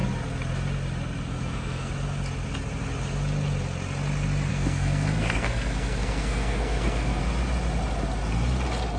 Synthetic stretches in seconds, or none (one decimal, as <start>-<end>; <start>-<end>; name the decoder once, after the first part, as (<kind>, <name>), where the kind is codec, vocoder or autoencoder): 1.3-1.9 (codec, SNAC); 4.5-7.2